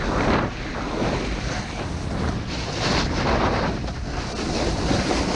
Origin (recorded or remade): recorded